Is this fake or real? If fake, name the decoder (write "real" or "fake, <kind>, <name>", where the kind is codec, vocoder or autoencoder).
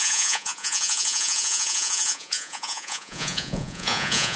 fake, vocoder, Vocos